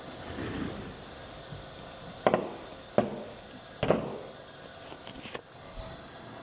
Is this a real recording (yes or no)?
yes